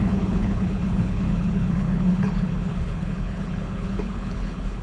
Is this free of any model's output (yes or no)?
no